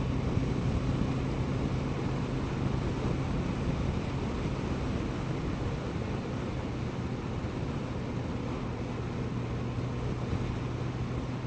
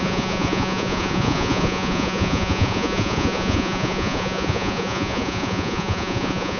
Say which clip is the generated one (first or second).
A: second